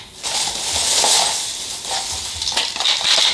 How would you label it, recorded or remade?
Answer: recorded